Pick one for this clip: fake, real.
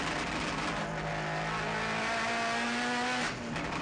real